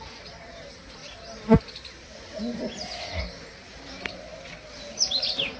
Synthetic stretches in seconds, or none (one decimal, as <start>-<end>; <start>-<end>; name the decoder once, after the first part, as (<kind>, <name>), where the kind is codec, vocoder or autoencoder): none